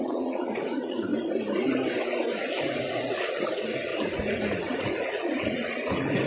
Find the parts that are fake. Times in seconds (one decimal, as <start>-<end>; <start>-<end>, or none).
0.0-1.1; 2.6-6.3